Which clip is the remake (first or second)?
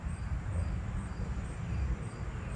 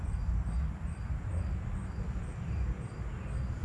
first